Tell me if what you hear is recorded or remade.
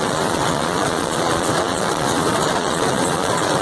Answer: remade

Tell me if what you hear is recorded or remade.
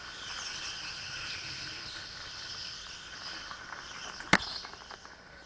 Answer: recorded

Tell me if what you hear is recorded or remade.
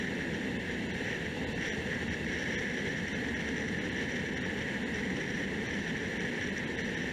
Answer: recorded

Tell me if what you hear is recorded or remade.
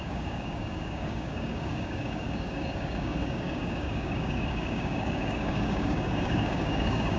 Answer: remade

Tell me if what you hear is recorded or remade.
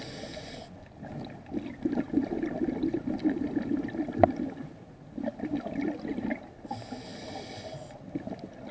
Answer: recorded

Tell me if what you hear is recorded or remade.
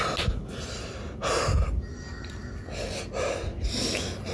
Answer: recorded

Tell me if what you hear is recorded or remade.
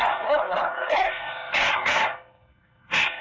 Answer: remade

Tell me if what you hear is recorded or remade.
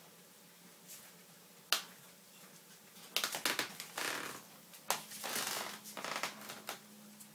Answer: recorded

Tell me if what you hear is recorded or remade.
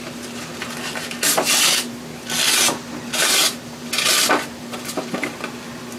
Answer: recorded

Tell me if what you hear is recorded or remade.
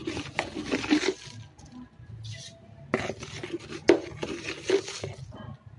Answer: recorded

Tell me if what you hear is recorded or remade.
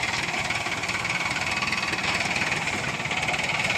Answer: recorded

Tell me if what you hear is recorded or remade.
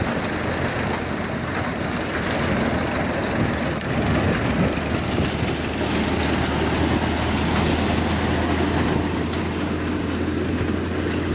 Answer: recorded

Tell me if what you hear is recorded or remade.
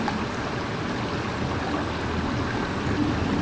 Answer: recorded